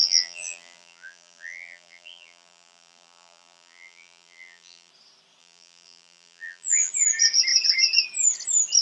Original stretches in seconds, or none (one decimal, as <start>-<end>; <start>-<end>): 4.9-5.4; 6.9-8.8